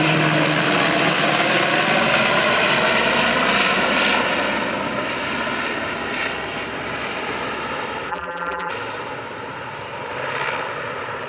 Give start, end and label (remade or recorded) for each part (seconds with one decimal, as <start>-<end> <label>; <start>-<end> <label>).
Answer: 0.0-8.1 recorded; 8.1-8.7 remade; 8.7-11.3 recorded